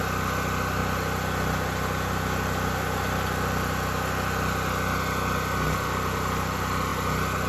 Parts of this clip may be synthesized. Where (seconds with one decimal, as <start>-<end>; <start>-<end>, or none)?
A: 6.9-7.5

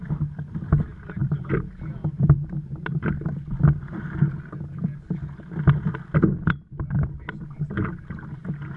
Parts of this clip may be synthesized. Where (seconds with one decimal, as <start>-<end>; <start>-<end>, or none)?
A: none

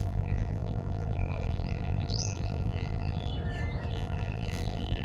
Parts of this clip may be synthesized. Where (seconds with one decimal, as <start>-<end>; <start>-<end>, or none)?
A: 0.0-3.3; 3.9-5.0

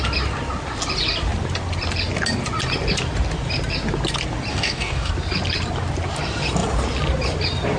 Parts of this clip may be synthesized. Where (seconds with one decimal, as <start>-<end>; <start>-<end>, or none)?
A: 4.5-5.1

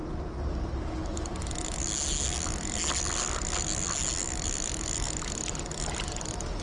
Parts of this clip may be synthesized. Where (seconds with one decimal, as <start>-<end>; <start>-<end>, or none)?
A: none